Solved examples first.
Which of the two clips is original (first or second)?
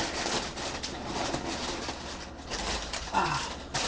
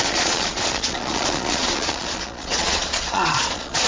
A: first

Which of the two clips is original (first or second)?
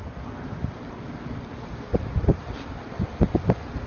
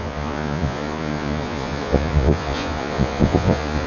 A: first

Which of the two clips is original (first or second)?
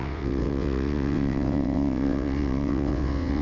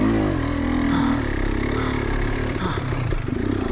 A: second